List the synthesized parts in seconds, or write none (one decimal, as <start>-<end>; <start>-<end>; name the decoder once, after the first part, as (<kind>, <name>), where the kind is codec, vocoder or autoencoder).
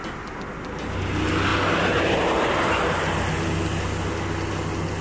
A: none